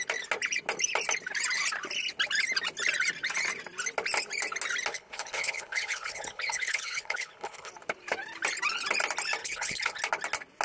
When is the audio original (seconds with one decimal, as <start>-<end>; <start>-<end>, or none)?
0.0-4.9; 7.7-9.4; 10.0-10.6